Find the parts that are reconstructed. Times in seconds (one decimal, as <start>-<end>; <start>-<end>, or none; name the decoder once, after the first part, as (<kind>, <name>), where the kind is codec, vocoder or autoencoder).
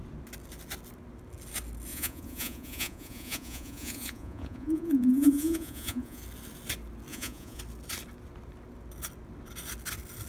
1.9-6.2 (vocoder, Vocos); 7.1-7.6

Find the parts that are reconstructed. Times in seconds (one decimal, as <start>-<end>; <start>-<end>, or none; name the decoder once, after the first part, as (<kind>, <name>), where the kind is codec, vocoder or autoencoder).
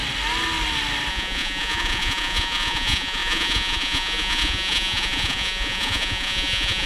1.1-6.9 (vocoder, Vocos)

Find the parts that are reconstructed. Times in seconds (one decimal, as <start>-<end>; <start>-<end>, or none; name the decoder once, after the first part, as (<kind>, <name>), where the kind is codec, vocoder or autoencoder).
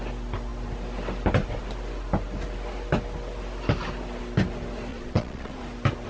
4.9-5.6 (vocoder, Vocos)